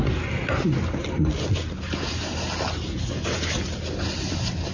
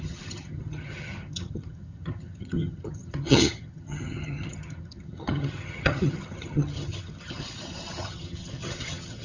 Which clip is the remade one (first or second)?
second